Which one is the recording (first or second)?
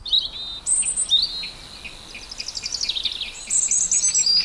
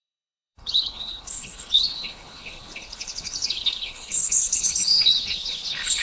first